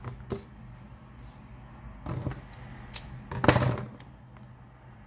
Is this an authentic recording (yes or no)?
yes